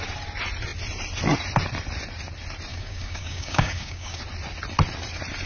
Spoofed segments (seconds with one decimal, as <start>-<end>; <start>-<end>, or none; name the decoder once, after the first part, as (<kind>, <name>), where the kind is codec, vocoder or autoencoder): 2.7-4.2 (codec, DAC)